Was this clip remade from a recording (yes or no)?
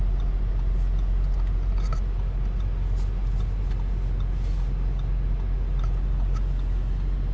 no